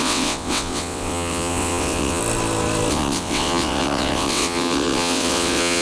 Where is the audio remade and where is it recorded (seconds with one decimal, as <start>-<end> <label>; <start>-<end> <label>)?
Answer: 0.0-2.2 remade; 2.2-2.9 recorded; 2.9-5.8 remade